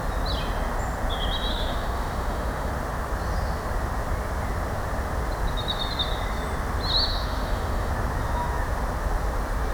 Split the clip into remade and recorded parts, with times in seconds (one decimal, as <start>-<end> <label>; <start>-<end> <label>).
0.0-1.5 recorded; 1.5-2.7 remade; 2.7-7.1 recorded; 7.1-7.9 remade; 7.9-9.7 recorded